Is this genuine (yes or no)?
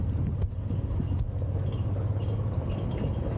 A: yes